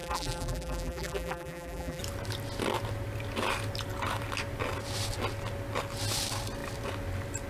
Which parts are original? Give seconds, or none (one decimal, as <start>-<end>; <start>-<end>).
2.0-7.5